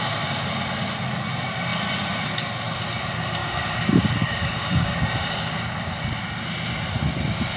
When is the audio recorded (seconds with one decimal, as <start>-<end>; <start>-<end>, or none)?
0.0-3.4; 5.9-7.6